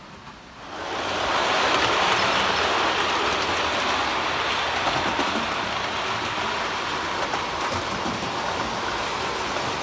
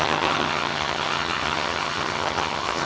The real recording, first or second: first